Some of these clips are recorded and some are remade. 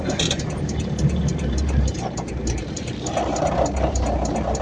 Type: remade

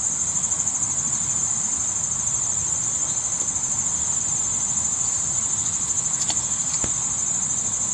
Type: recorded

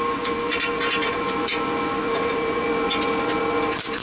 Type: recorded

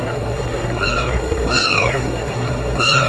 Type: remade